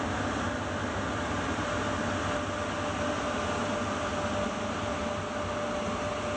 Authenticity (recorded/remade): recorded